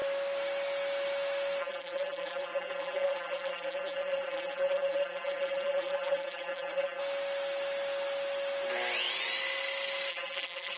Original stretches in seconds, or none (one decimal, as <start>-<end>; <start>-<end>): 0.0-1.6; 7.0-10.1